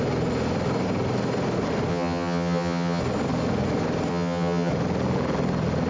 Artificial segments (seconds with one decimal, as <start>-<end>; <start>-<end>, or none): 1.9-3.0; 4.1-4.7